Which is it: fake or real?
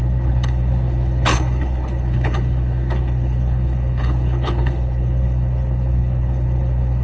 fake